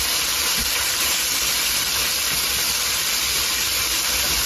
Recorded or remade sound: recorded